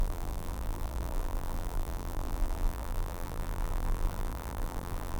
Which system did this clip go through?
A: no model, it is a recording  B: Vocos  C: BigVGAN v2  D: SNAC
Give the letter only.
C